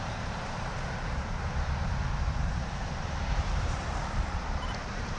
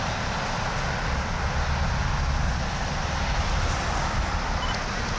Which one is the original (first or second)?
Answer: second